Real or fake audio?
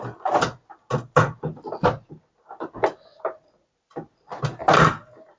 real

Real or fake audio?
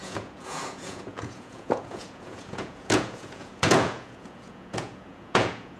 fake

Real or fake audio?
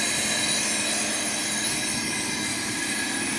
real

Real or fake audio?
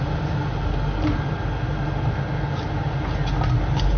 real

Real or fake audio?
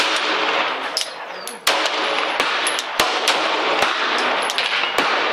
real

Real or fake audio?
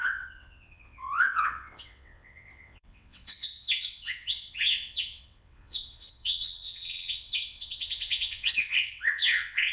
fake